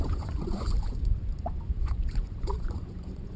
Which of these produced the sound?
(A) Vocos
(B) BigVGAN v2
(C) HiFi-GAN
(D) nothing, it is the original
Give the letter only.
A